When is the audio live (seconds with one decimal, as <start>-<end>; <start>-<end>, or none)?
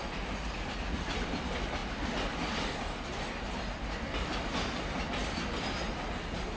0.0-6.6